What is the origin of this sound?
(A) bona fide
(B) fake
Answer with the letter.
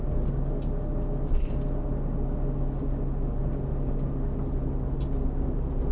A